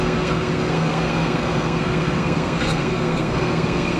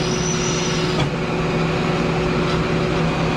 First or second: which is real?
second